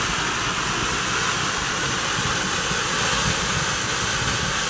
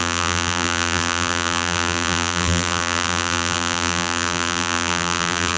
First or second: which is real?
first